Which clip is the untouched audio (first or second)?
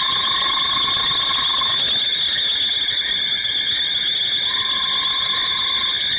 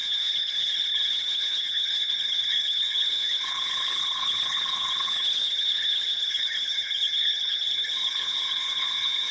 first